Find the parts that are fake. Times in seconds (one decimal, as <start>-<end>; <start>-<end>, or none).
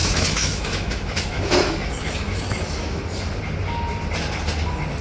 0.0-3.0